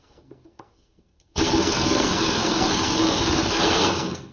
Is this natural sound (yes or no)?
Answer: no